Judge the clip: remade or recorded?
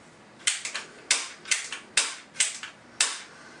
recorded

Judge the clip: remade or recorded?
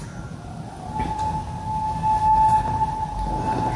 recorded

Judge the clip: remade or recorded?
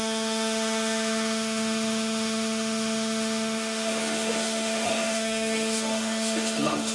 remade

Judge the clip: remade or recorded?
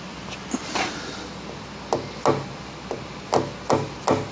recorded